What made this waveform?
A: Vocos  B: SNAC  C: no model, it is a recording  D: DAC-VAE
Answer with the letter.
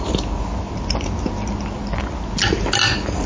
C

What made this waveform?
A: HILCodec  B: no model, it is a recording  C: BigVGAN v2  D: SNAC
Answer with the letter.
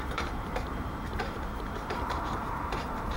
C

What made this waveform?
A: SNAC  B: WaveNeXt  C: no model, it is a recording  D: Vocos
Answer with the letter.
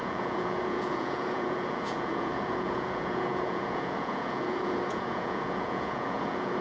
D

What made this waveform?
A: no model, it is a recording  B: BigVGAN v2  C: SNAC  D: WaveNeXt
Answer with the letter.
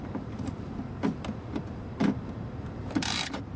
B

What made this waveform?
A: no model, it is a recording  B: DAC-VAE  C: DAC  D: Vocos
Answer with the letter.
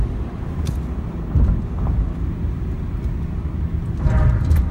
A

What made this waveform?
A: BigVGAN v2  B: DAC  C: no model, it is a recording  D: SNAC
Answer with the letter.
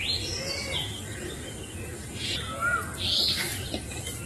C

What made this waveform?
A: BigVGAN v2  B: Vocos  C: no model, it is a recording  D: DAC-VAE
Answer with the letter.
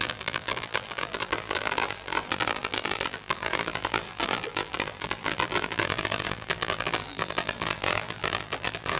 A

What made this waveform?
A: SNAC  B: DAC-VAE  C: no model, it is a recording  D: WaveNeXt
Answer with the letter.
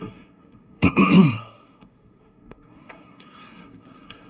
A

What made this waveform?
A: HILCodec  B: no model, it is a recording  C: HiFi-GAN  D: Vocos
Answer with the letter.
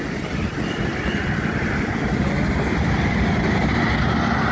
B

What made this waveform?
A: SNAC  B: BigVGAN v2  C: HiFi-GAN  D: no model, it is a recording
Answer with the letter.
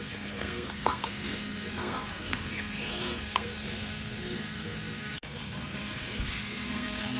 A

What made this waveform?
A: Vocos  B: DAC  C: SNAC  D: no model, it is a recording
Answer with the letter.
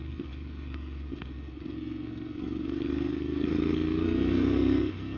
C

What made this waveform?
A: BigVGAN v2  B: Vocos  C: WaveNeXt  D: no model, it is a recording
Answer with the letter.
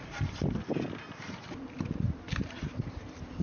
D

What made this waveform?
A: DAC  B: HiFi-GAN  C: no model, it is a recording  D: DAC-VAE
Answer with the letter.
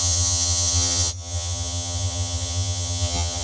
B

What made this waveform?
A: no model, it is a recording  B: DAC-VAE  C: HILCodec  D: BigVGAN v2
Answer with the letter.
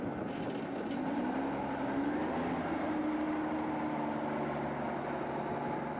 A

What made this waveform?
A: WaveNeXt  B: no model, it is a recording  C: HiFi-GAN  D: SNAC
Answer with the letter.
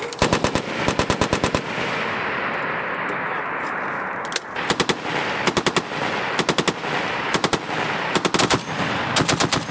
B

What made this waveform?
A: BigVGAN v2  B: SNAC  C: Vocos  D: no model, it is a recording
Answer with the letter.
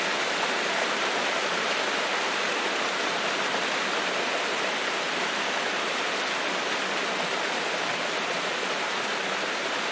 D